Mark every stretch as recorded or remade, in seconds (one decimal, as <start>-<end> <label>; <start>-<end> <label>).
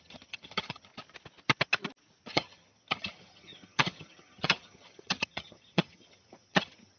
0.0-0.9 remade; 0.9-2.3 recorded; 2.3-7.0 remade